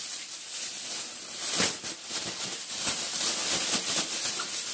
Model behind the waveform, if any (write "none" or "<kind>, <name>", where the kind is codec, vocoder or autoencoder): none